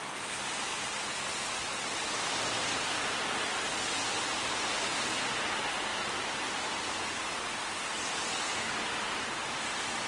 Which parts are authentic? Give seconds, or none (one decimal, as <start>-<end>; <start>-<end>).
0.0-10.1